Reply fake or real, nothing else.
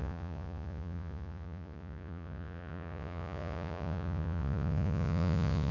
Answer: fake